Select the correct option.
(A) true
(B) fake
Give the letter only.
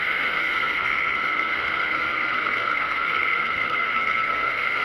B